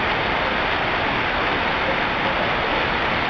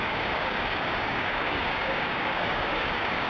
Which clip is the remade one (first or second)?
second